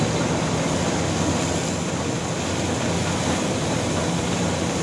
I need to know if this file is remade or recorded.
recorded